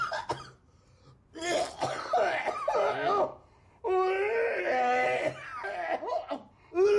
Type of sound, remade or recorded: recorded